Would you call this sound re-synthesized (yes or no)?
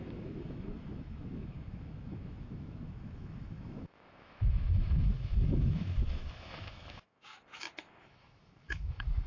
yes